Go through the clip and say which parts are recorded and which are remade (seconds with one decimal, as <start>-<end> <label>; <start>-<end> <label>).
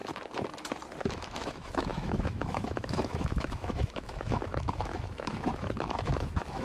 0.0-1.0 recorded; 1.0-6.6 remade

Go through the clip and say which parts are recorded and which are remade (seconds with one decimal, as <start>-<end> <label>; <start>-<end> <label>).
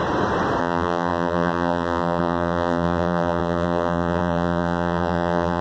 0.0-0.6 recorded; 0.6-5.6 remade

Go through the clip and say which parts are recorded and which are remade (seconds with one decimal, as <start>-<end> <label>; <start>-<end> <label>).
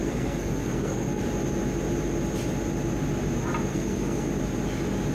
0.0-1.2 remade; 1.2-3.7 recorded; 3.7-4.3 remade; 4.3-5.1 recorded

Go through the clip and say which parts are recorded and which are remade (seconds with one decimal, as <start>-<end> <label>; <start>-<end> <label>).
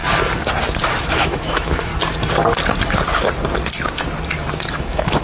0.0-1.0 recorded; 1.0-1.9 remade; 1.9-4.7 recorded; 4.7-5.2 remade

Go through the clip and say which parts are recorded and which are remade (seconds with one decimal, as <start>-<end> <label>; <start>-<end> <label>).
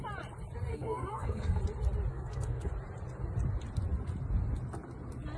0.0-0.7 recorded; 0.7-1.6 remade; 1.6-2.1 recorded; 2.1-2.7 remade; 2.7-5.4 recorded